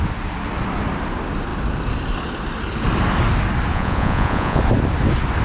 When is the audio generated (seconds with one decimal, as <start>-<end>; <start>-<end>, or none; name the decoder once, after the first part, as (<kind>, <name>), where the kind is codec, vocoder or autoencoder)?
3.7-4.6 (vocoder, Vocos)